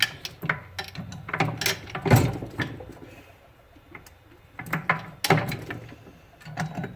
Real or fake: real